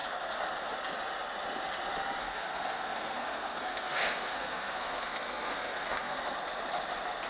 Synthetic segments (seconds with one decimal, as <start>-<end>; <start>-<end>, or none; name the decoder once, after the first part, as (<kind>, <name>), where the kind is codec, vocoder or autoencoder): 2.2-6.3 (codec, SNAC)